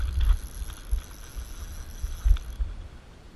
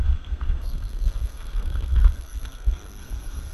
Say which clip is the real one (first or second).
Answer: first